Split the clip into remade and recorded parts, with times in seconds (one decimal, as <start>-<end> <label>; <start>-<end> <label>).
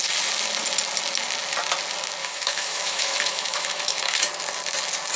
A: 0.0-2.2 recorded; 2.2-4.3 remade; 4.3-5.2 recorded